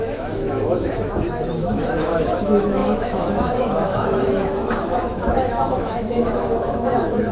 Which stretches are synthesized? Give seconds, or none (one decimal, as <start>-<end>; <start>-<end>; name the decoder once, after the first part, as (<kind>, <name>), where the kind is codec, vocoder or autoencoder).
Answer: 0.0-7.3 (autoencoder, DAC-VAE)